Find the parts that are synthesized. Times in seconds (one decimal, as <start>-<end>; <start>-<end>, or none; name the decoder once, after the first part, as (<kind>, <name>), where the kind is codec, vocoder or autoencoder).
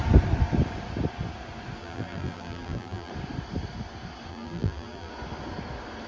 1.8-3.1 (vocoder, BigVGAN v2); 4.3-5.1